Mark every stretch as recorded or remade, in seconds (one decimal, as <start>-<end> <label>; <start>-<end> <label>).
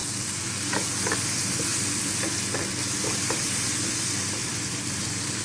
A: 0.0-2.8 recorded; 2.8-5.4 remade